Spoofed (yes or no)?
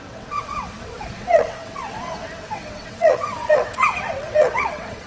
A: yes